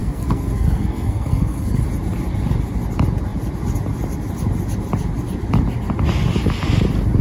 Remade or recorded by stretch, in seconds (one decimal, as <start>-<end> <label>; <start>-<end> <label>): 0.0-1.8 remade; 1.8-7.2 recorded